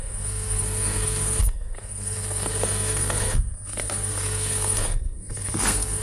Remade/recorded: remade